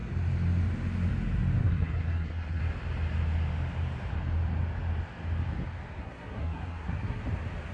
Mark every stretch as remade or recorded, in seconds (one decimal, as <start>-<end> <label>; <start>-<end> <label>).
0.0-1.6 recorded; 1.6-2.6 remade; 2.6-6.0 recorded; 6.0-7.2 remade; 7.2-7.7 recorded